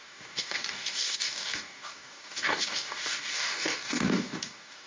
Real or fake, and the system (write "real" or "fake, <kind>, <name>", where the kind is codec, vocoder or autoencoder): fake, codec, DAC